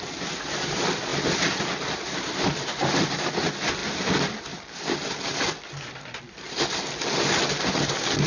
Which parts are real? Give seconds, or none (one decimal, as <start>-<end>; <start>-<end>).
0.0-1.1; 3.1-3.8; 6.2-8.3